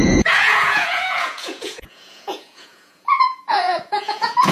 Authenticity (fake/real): fake